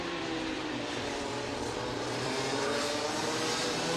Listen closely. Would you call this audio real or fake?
fake